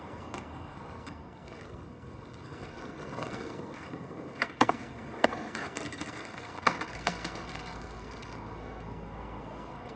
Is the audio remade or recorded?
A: remade